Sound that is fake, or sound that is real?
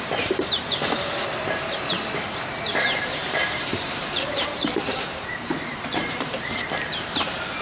fake